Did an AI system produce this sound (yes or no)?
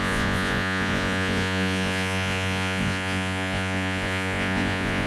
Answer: yes